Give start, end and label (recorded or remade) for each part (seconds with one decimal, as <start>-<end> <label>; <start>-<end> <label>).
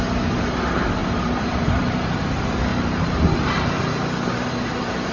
0.0-1.0 recorded; 1.0-2.2 remade; 2.2-2.7 recorded; 2.7-5.1 remade